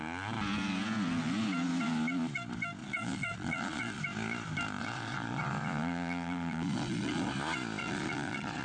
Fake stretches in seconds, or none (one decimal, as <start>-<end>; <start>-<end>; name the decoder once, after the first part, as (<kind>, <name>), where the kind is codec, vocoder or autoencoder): 2.8-4.0 (vocoder, Vocos); 4.8-7.3; 7.8-8.6